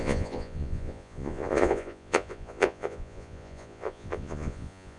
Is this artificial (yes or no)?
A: yes